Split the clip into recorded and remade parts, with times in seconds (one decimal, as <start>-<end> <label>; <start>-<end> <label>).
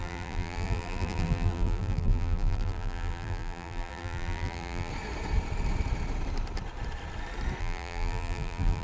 0.0-4.9 remade; 4.9-7.6 recorded; 7.6-8.8 remade